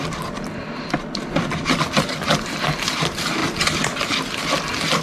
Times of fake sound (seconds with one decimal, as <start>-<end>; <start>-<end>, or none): none